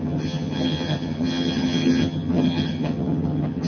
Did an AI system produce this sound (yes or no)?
yes